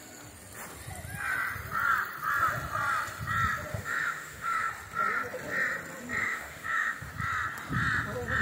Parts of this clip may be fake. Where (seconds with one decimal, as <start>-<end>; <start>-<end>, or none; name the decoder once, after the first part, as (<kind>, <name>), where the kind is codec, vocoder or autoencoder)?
3.7-4.7 (autoencoder, DAC-VAE); 6.2-7.1